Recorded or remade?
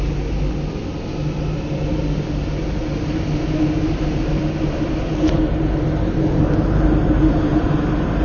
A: recorded